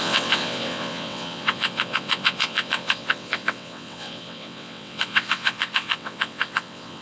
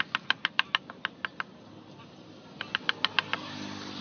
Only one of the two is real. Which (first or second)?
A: second